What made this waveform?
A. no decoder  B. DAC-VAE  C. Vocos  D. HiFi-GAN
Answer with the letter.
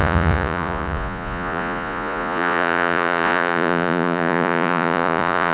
C